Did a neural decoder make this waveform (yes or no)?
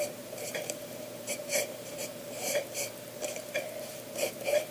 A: yes